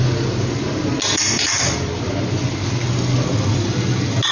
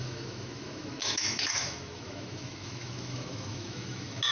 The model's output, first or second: second